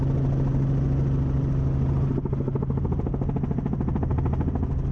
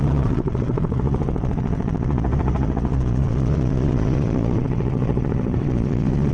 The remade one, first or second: second